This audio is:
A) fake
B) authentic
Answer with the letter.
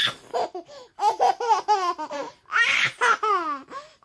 B